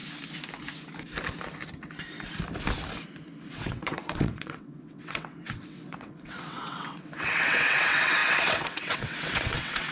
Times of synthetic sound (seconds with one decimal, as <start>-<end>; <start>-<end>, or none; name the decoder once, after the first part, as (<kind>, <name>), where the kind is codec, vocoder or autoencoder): 3.5-9.9 (vocoder, WaveNeXt)